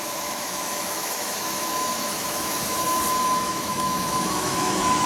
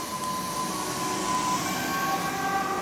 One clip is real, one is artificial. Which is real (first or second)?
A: second